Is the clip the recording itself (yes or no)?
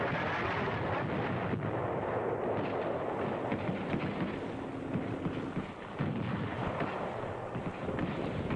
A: yes